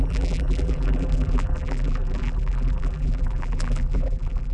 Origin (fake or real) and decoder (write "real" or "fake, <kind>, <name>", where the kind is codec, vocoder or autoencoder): fake, vocoder, BigVGAN v2